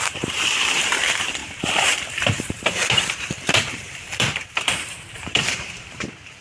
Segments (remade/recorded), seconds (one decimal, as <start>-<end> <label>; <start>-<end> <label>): 0.0-6.4 remade